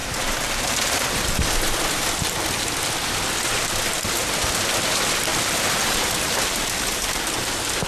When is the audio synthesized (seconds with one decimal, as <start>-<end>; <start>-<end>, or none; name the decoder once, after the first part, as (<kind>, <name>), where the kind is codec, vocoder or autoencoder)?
0.0-1.3 (vocoder, BigVGAN v2); 5.3-7.5

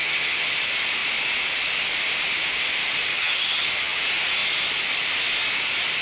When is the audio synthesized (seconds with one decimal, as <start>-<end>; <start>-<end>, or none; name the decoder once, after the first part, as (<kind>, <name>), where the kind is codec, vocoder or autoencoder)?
0.0-0.6 (vocoder, HiFi-GAN); 3.1-4.0